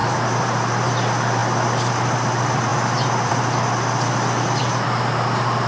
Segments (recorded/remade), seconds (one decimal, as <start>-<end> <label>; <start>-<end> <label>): 0.0-0.9 remade; 0.9-5.7 recorded